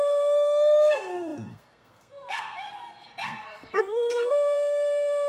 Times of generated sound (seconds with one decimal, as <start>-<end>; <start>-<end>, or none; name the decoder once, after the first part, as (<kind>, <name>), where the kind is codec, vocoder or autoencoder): 0.0-5.3 (codec, SNAC)